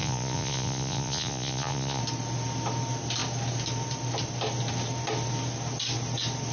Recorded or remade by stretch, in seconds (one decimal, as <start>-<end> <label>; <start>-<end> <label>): 0.0-2.0 remade; 2.0-6.5 recorded